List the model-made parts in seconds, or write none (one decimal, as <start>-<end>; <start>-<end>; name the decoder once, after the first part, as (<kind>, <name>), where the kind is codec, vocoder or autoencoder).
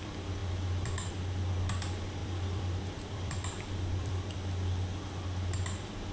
2.2-4.3 (vocoder, BigVGAN v2)